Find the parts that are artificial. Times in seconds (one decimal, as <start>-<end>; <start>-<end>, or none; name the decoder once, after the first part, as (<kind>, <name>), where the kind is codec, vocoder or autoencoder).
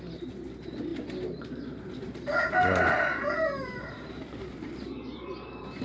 none